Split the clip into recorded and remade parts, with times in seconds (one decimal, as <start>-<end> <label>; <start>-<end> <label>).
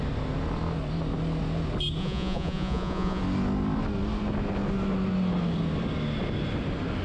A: 0.0-2.0 recorded; 2.0-3.2 remade; 3.2-7.0 recorded